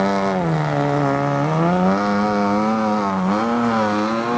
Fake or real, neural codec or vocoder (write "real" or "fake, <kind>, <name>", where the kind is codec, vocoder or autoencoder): real